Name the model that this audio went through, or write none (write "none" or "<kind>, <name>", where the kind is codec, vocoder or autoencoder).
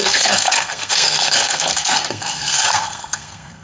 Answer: codec, SNAC